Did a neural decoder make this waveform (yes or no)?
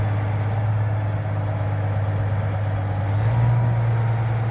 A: no